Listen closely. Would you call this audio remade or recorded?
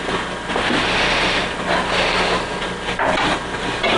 recorded